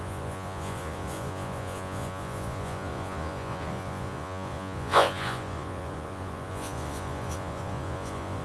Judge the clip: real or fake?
fake